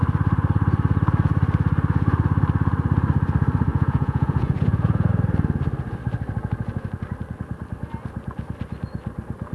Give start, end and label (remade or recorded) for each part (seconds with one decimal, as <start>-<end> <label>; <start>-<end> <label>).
0.0-3.7 recorded; 3.7-5.1 remade; 5.1-9.5 recorded